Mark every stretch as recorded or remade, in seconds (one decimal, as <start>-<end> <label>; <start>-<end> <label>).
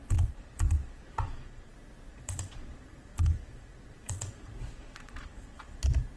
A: 0.0-1.7 remade; 1.7-2.1 recorded; 2.1-5.8 remade; 5.8-6.2 recorded